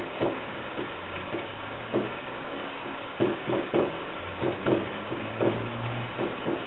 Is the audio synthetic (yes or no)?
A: yes